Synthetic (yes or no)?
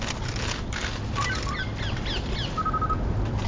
no